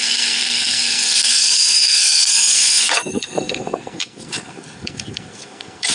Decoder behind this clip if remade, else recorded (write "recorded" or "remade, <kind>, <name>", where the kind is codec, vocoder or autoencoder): remade, codec, SNAC